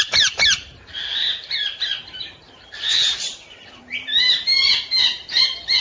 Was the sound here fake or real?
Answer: fake